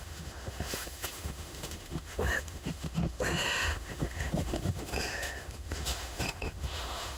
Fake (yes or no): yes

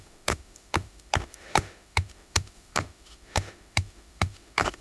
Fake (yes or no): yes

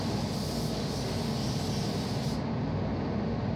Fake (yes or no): no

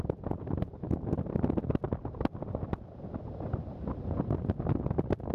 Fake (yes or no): no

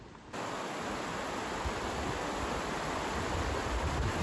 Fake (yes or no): no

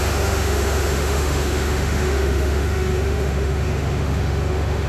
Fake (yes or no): yes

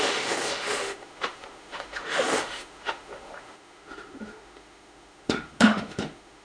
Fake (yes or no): yes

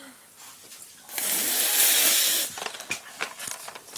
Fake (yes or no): no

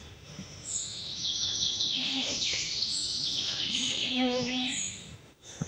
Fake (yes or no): yes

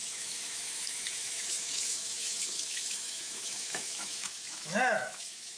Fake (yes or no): yes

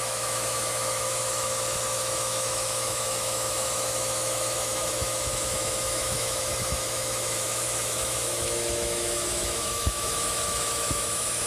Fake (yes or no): yes